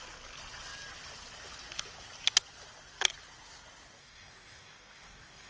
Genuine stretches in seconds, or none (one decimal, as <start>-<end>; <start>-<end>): 0.0-4.0